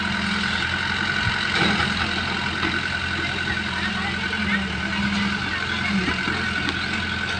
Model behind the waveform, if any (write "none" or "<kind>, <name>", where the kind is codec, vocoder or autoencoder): none